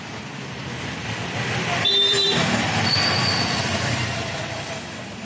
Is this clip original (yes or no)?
no